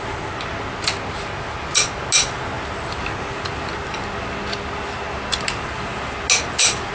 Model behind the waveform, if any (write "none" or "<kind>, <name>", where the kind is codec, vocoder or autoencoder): none